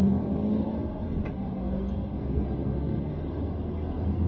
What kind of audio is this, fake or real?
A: fake